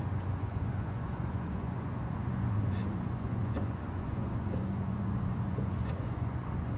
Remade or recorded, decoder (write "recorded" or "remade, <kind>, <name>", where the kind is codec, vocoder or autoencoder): remade, vocoder, Vocos